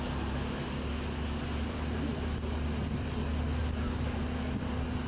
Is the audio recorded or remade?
recorded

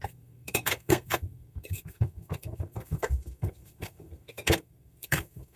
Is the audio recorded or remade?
remade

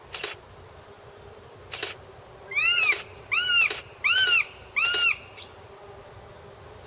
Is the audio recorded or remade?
recorded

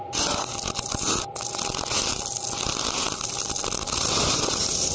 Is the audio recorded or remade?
recorded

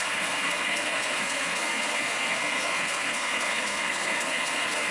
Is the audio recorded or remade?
remade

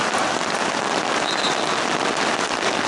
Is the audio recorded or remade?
recorded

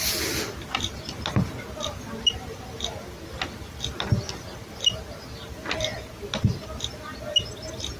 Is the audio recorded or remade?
recorded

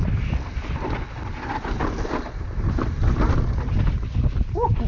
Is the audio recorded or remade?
recorded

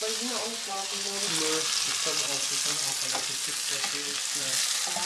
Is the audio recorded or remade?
recorded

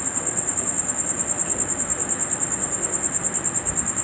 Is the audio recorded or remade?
recorded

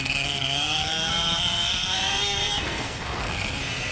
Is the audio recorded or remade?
remade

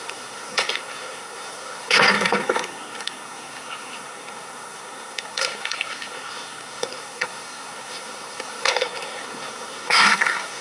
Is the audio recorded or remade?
remade